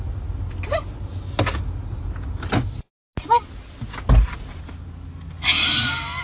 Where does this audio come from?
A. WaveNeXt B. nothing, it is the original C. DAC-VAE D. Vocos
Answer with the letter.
B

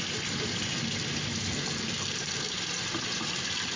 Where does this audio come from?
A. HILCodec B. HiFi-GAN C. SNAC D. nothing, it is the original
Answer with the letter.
D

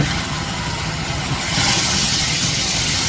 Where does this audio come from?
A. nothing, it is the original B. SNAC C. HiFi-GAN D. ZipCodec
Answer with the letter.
C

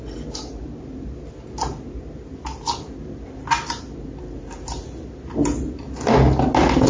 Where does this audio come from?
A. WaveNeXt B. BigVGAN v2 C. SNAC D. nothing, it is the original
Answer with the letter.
D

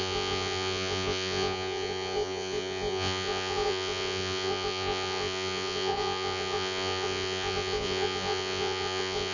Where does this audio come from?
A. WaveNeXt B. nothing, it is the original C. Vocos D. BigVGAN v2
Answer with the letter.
C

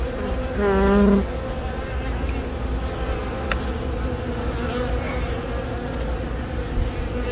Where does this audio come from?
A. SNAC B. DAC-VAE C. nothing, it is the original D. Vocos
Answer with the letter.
C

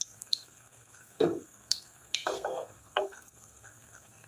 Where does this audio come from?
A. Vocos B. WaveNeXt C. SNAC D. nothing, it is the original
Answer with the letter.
C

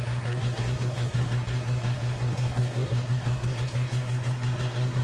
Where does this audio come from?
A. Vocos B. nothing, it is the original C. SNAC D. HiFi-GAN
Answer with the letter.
C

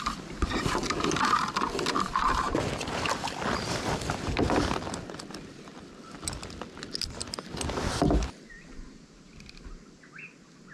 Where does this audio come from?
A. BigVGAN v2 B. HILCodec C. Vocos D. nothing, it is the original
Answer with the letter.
D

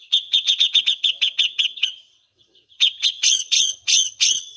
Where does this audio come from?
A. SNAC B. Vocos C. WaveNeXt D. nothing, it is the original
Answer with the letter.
C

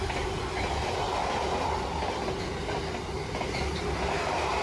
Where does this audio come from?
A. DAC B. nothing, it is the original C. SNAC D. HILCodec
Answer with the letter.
B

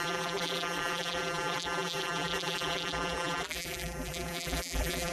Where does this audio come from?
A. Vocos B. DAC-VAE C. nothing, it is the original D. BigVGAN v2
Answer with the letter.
D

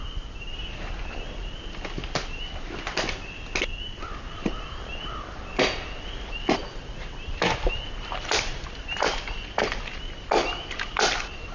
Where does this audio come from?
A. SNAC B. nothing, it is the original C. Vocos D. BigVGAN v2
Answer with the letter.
B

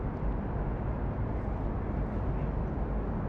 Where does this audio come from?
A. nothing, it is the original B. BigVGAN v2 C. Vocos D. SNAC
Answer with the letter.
A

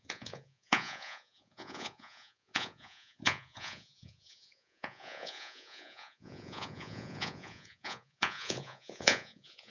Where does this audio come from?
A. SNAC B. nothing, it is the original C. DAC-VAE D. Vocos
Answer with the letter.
D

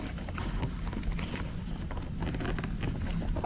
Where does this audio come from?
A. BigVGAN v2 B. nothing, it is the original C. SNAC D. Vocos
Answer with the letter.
B